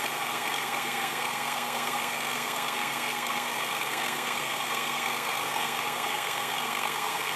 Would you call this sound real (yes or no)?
no